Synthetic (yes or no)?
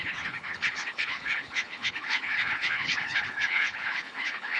yes